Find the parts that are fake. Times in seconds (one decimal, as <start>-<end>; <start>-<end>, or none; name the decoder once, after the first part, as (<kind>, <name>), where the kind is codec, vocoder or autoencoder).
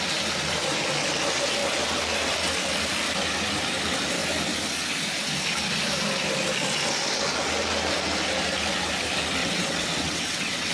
9.4-10.7 (vocoder, WaveNeXt)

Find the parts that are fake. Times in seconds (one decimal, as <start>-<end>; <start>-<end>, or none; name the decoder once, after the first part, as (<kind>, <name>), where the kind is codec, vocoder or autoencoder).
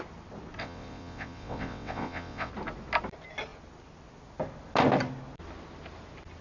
0.6-2.5 (vocoder, WaveNeXt)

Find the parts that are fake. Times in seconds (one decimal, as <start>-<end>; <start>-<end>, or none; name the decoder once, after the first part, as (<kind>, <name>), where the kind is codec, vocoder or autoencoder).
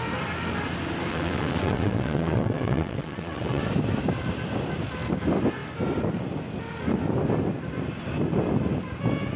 1.1-3.6 (vocoder, WaveNeXt)